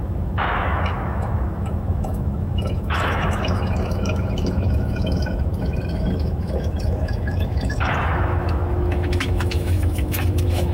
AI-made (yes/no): yes